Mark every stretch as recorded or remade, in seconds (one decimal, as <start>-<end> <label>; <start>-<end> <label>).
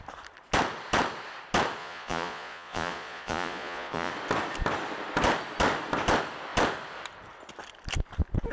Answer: 0.0-1.8 recorded; 1.8-4.1 remade; 4.1-8.5 recorded